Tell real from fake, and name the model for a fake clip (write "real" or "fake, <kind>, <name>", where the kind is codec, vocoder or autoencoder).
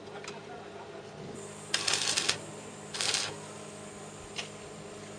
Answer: real